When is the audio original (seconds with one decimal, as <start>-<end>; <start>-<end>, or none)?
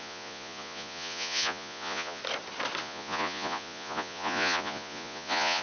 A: 2.2-2.8